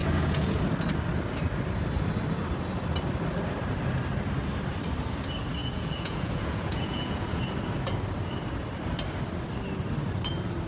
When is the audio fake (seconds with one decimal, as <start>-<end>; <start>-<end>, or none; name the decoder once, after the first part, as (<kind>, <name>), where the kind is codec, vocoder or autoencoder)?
0.0-0.6 (vocoder, Vocos); 5.6-7.4